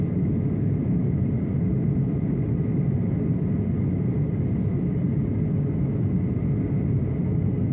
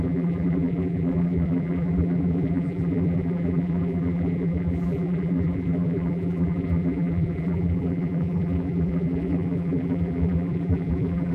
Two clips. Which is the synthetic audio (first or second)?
second